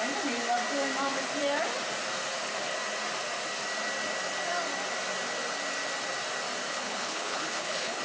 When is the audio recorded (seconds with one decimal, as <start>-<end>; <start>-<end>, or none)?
0.0-6.7